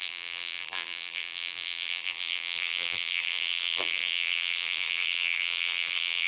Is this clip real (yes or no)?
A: no